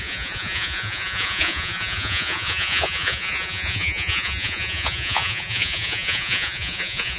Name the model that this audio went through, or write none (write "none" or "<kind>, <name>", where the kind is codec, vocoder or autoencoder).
vocoder, Vocos